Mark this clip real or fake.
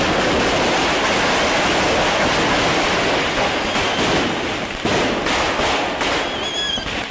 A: real